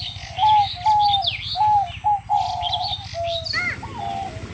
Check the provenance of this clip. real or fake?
real